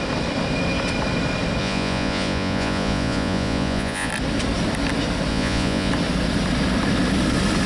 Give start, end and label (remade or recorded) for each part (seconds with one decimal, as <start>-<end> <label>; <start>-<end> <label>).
0.0-1.6 recorded; 1.6-4.1 remade; 4.1-5.3 recorded; 5.3-5.9 remade; 5.9-7.7 recorded